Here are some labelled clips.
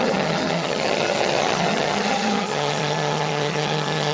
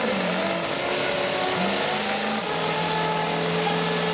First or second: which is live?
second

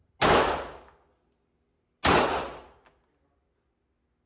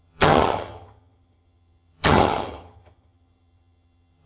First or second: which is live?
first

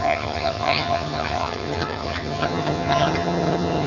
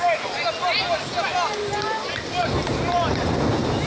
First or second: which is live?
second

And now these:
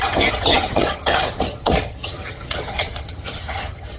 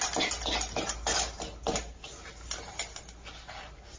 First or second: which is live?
second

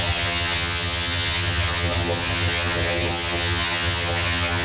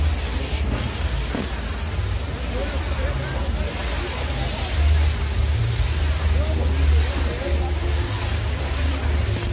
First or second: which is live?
second